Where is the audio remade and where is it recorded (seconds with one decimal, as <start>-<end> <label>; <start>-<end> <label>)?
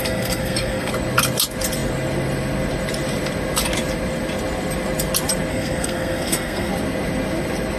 0.0-0.9 remade; 0.9-5.5 recorded; 5.5-6.7 remade; 6.7-7.8 recorded